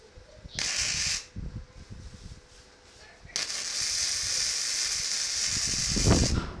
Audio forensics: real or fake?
real